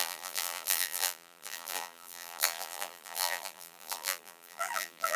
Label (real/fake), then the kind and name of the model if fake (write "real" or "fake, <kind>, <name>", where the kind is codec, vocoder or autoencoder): fake, vocoder, BigVGAN v2